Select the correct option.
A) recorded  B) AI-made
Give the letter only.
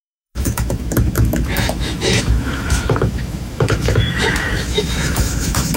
B